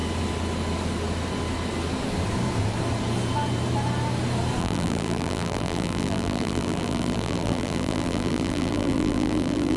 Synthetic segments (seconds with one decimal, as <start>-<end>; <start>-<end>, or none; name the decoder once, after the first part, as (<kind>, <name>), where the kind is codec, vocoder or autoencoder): 4.6-9.8 (vocoder, BigVGAN v2)